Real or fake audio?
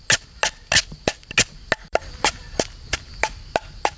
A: real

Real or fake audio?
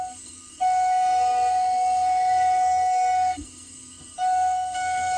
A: fake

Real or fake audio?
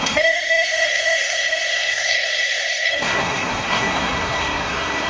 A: fake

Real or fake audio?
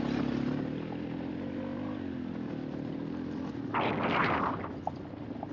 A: real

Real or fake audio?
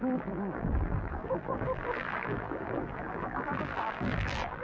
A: fake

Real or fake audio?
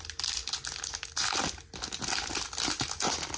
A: real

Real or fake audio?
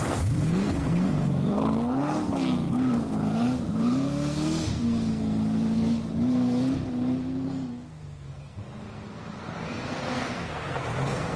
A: fake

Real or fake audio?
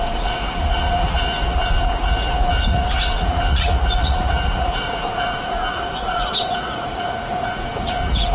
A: fake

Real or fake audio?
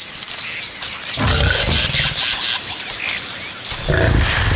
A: real